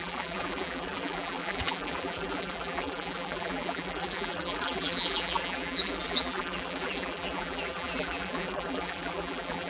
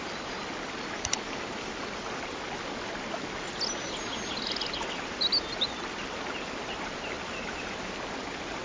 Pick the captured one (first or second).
second